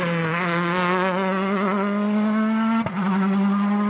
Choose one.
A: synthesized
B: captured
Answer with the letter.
B